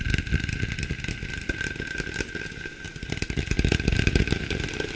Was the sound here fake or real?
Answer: real